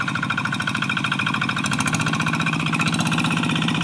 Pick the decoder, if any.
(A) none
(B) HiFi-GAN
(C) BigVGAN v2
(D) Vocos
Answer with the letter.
C